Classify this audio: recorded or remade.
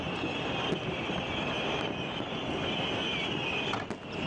recorded